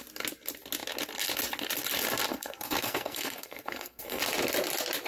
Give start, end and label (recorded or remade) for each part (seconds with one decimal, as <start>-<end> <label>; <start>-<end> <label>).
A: 0.0-2.3 recorded; 2.3-4.2 remade; 4.2-5.1 recorded